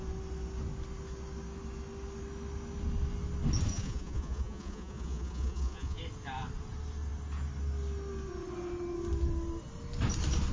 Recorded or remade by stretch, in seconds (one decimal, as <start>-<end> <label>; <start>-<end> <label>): 0.0-3.7 recorded; 3.7-6.0 remade; 6.0-10.5 recorded